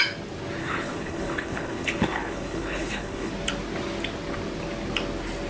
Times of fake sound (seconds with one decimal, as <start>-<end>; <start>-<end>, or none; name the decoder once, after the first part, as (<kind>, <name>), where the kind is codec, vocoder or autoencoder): 0.6-3.3 (codec, HILCodec)